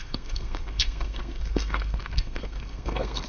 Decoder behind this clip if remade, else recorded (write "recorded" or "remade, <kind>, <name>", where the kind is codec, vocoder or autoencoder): remade, codec, SNAC